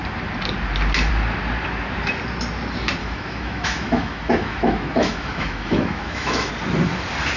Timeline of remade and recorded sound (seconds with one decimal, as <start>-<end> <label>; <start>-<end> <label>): 0.0-3.0 recorded; 3.0-6.5 remade; 6.5-7.4 recorded